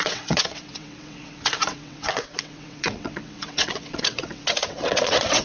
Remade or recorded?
remade